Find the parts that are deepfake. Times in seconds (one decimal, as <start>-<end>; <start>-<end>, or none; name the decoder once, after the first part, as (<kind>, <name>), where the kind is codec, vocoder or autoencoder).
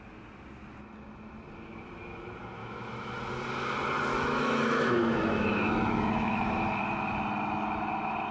2.6-3.2 (autoencoder, DAC-VAE); 4.1-6.8